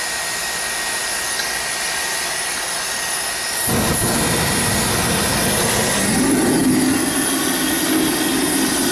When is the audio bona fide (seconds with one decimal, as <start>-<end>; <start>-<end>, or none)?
0.0-8.9